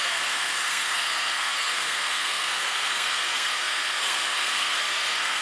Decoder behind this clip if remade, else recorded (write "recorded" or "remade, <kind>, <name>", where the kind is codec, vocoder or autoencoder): remade, codec, SNAC